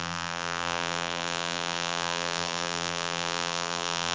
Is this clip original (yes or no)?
no